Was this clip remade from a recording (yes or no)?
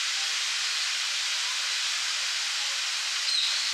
no